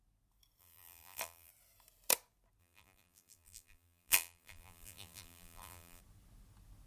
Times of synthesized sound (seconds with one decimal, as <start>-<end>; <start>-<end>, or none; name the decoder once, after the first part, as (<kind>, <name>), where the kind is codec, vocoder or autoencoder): 0.6-1.5 (vocoder, BigVGAN v2); 2.6-6.0